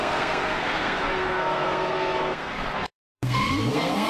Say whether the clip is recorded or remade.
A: remade